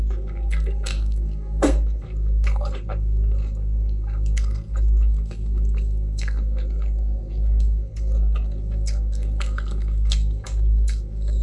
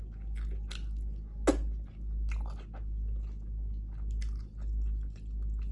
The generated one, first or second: first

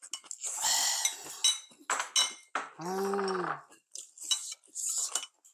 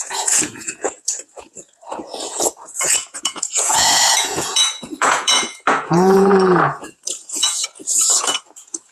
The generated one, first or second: second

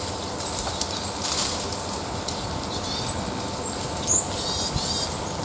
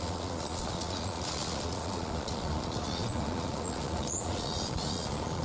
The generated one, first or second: second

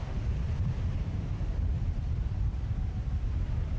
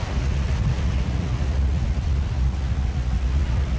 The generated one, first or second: second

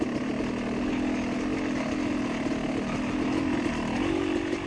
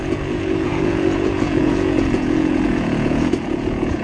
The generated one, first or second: second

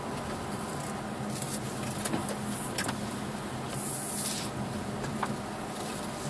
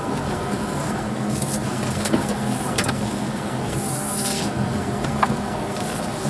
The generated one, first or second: second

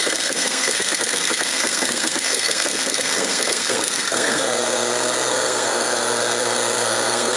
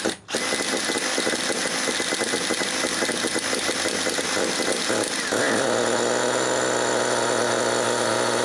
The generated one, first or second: first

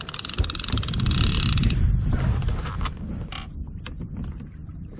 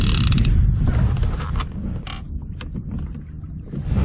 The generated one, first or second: first